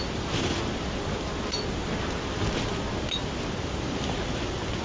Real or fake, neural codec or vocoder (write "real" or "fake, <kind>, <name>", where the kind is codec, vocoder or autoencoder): real